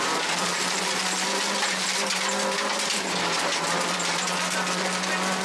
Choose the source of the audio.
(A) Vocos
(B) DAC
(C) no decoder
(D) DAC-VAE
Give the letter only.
C